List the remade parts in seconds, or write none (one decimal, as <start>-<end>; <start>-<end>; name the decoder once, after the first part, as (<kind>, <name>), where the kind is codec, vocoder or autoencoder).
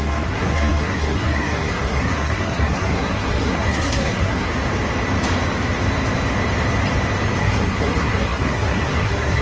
0.0-4.5 (codec, SNAC); 7.4-9.4